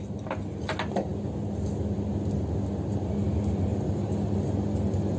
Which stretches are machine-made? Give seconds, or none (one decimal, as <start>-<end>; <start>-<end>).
3.7-5.2